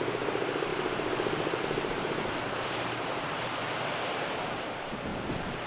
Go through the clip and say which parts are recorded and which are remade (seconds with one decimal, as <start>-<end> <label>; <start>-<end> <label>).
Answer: 0.0-0.7 remade; 0.7-1.6 recorded; 1.6-3.6 remade; 3.6-4.4 recorded; 4.4-5.7 remade